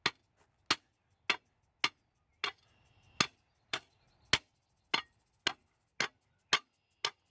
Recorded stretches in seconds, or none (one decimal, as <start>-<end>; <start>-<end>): 0.0-7.3